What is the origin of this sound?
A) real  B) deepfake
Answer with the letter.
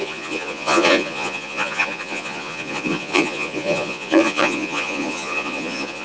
B